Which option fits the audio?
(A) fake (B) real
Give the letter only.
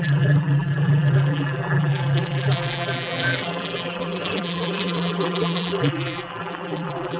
A